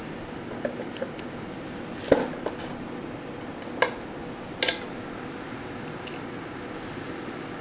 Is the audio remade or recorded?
recorded